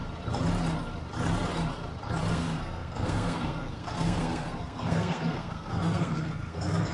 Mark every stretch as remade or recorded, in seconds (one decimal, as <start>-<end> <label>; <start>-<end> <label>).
0.0-2.3 recorded; 2.3-6.9 remade